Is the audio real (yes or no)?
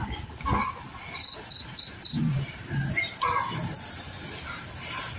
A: no